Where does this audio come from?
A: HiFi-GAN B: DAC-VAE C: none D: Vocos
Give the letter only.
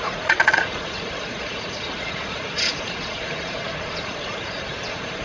D